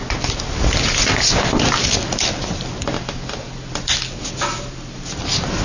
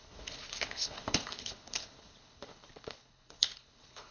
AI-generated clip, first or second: second